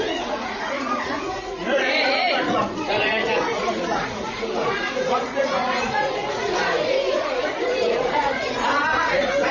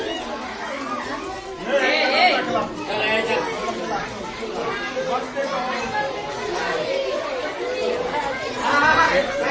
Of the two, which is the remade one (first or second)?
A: first